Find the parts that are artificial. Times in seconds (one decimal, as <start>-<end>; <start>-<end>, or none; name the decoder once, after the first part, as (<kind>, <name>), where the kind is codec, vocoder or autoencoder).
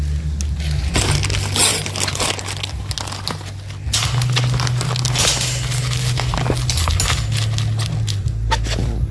none